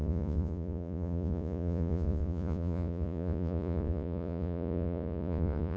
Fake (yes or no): yes